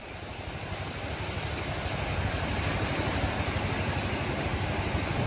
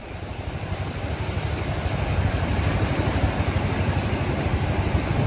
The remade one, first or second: second